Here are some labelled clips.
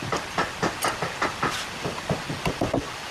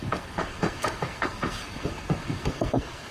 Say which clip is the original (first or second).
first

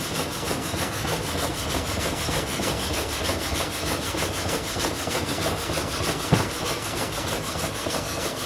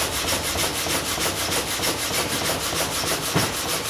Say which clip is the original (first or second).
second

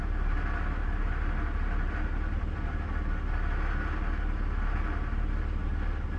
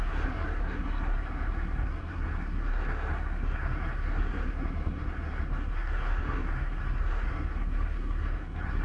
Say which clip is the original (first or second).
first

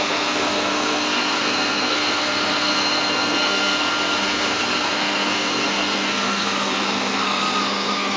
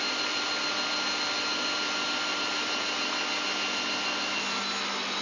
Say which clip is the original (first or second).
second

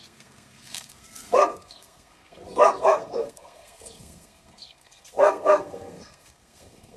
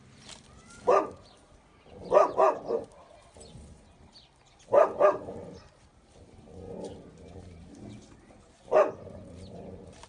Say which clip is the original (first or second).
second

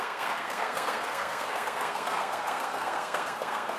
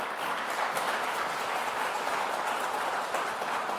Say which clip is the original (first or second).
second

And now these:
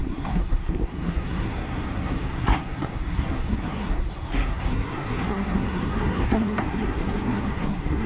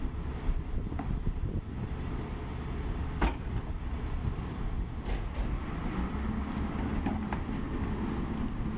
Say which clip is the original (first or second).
second